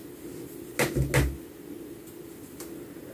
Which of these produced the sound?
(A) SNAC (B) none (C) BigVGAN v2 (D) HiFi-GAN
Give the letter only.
B